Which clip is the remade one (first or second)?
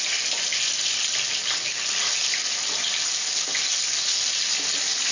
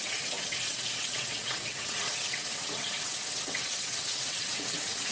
second